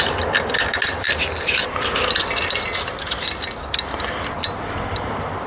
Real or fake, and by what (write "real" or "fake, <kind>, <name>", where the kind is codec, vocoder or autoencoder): real